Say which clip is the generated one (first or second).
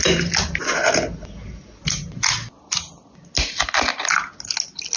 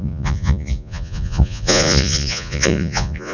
second